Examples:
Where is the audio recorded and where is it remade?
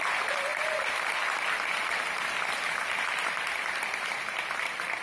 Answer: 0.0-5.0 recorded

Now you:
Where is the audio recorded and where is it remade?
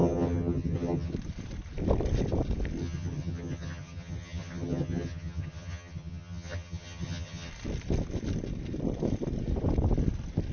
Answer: 0.0-1.1 remade; 1.1-2.8 recorded; 2.8-7.5 remade; 7.5-10.5 recorded